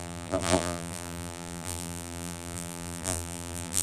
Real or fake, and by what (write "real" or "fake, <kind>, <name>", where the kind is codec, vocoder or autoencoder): fake, vocoder, BigVGAN v2